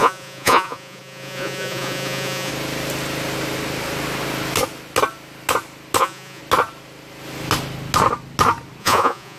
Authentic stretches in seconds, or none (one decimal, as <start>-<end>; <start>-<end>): 2.5-6.0; 6.4-8.8